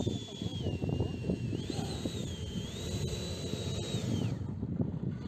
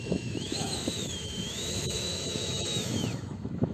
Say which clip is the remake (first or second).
second